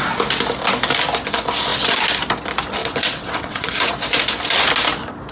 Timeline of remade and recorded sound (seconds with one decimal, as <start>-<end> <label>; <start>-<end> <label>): 0.0-2.8 recorded; 2.8-3.7 remade; 3.7-5.3 recorded